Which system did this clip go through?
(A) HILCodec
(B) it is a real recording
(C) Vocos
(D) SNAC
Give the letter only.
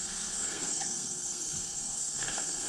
D